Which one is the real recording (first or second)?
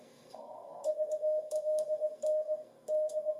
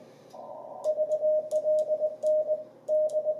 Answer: second